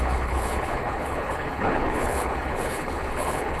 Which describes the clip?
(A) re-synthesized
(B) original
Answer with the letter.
A